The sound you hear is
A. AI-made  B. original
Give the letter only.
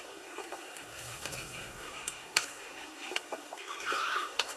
A